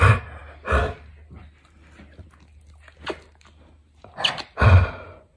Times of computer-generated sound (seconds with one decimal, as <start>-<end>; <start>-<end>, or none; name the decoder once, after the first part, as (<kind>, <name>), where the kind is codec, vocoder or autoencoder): none